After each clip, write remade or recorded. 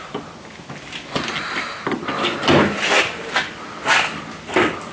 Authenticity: recorded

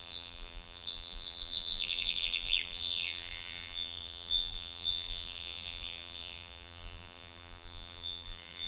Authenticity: remade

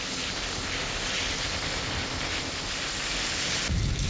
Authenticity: recorded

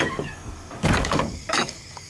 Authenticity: remade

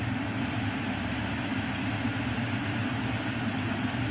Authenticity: recorded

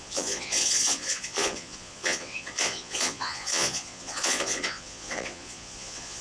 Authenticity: remade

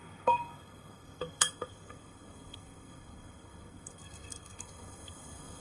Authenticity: remade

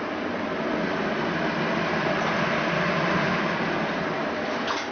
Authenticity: recorded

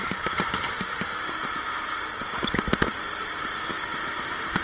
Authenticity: recorded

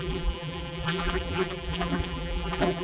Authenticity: remade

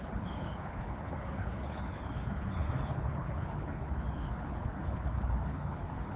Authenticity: remade